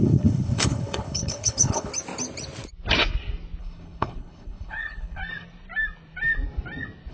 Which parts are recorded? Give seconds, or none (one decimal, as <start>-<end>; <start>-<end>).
1.9-3.6; 5.2-7.1